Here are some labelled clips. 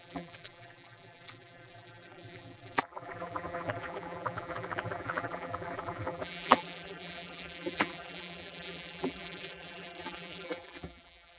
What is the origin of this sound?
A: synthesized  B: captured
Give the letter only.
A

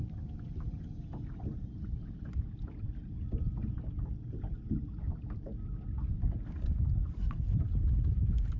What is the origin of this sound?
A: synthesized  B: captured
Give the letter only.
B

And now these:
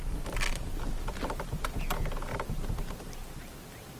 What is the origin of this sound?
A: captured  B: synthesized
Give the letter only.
A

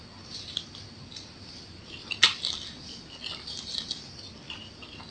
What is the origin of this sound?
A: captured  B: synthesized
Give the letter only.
B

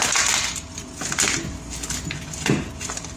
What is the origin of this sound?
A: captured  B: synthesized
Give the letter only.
A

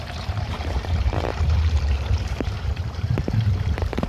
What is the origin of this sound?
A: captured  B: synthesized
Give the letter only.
B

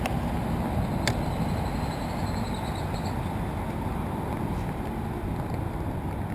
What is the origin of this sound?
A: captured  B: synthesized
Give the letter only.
A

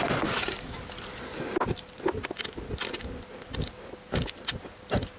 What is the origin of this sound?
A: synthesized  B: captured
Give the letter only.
B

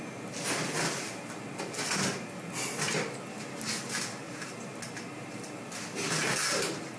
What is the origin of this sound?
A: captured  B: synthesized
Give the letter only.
A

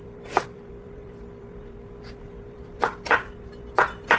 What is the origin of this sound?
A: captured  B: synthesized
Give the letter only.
B